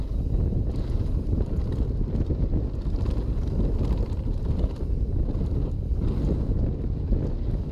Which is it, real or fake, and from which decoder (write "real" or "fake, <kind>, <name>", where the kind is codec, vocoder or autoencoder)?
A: real